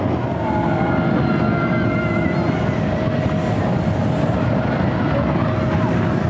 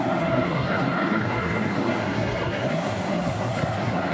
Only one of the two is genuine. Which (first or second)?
first